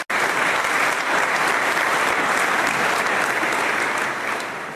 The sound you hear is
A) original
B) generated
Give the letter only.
A